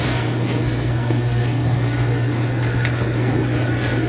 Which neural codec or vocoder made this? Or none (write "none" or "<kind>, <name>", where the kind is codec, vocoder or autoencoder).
codec, SNAC